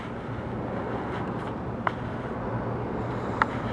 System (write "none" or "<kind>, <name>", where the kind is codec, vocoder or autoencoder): none